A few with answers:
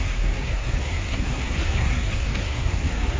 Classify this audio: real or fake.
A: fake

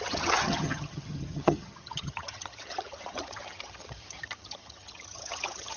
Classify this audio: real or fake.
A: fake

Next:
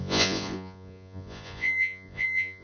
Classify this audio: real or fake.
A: fake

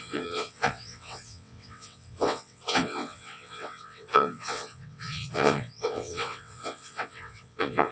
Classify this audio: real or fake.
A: fake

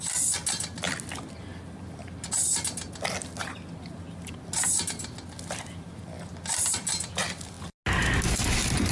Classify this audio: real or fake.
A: real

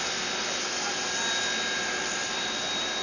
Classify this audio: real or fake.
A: real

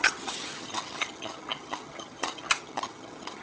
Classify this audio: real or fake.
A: fake